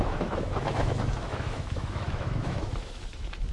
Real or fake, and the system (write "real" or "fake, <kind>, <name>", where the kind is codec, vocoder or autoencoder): fake, autoencoder, DAC-VAE